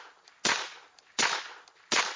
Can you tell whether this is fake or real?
real